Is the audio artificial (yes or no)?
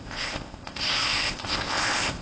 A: yes